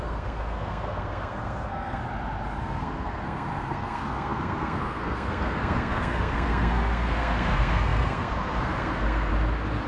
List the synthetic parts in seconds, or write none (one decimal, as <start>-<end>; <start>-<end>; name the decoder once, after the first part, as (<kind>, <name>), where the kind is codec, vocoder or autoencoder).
0.0-2.0 (codec, SNAC); 2.6-9.3